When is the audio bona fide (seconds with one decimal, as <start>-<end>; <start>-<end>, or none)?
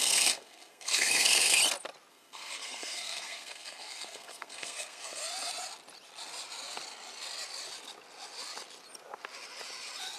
1.6-2.1; 5.2-10.2